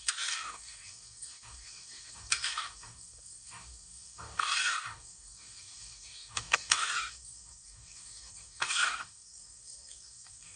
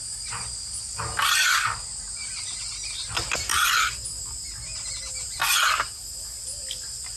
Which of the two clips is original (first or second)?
second